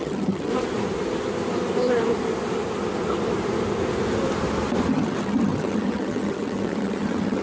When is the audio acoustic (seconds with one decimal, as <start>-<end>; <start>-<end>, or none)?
0.5-4.9